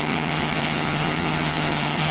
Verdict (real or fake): fake